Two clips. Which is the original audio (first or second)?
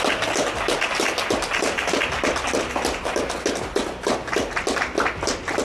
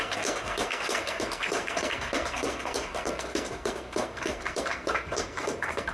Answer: first